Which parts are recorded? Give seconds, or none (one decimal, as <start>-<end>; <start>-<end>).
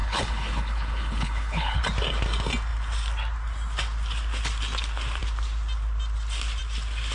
1.8-7.1